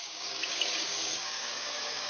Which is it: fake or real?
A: fake